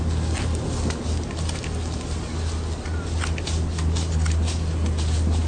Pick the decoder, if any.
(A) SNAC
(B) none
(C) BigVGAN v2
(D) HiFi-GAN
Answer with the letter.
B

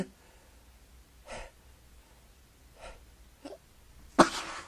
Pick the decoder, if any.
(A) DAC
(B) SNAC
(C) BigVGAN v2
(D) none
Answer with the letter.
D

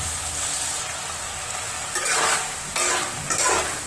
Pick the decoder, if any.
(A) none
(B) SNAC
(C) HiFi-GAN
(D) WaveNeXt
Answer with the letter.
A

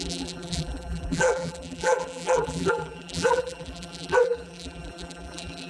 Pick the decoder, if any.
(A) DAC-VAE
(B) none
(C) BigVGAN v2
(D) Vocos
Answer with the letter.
C